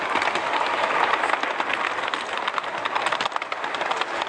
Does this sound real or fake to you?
real